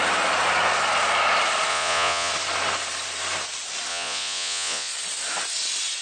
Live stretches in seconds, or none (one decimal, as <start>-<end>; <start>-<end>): 0.0-1.7; 2.3-3.9; 4.9-6.0